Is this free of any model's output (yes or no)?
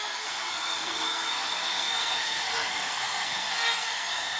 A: no